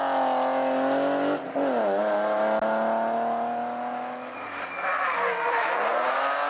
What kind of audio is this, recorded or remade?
recorded